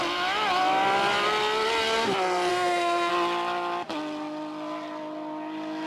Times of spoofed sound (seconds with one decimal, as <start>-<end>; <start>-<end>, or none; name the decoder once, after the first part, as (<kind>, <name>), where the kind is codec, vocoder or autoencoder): 2.5-3.1 (autoencoder, DAC-VAE)